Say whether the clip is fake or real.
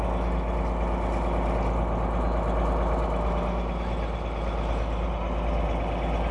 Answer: real